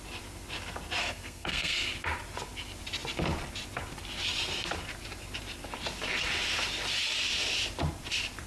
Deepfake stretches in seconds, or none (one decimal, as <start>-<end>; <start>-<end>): 1.0-1.9